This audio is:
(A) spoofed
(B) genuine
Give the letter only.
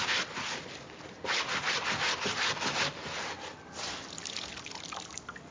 B